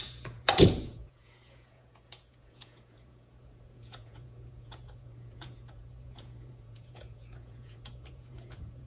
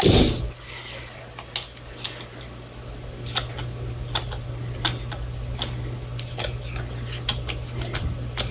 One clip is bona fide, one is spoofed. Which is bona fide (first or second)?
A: second